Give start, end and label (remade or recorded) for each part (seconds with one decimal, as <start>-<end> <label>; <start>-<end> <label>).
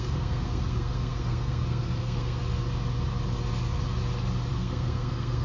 0.0-2.4 remade; 2.4-4.5 recorded; 4.5-5.4 remade